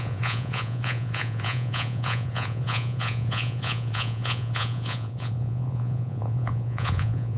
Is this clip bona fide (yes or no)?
no